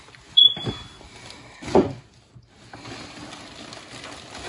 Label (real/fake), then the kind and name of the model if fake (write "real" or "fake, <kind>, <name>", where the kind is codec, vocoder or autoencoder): real